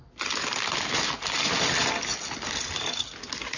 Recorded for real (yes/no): yes